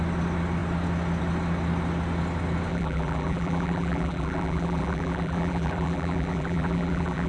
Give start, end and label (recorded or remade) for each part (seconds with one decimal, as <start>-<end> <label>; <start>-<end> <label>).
0.0-2.7 recorded; 2.7-7.3 remade